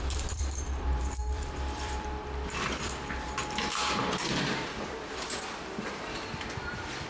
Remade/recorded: remade